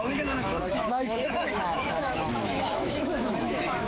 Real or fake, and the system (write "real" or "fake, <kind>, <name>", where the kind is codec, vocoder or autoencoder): fake, autoencoder, DAC-VAE